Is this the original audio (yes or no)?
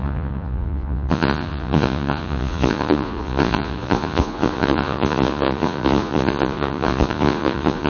no